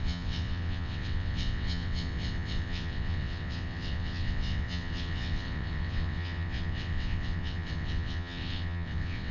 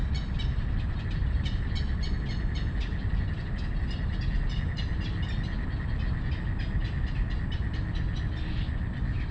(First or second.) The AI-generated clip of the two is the first